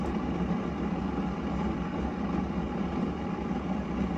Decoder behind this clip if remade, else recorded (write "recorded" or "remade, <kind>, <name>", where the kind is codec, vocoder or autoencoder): recorded